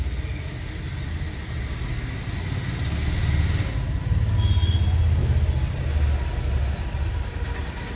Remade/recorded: recorded